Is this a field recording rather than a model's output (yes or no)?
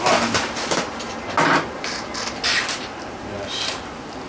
yes